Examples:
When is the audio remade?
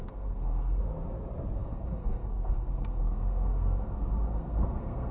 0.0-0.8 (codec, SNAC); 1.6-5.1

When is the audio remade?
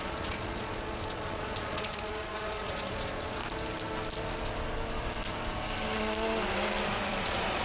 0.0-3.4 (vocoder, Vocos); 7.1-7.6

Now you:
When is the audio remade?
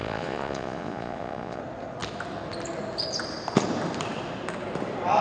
0.0-1.6 (vocoder, Vocos)